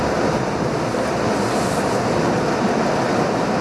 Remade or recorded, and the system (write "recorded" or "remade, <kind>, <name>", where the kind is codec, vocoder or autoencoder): recorded